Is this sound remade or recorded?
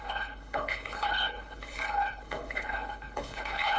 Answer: remade